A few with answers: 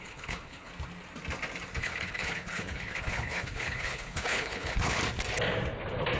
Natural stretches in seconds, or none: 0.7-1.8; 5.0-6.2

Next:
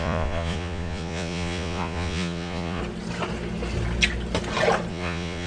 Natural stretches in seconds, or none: 2.8-4.9

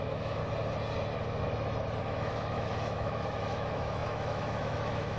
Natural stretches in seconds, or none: 0.4-2.0

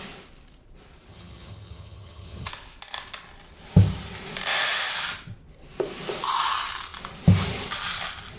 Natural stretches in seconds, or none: 0.0-1.1; 2.5-8.4